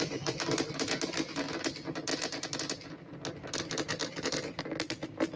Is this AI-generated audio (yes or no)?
no